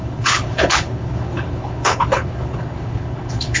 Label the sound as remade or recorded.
remade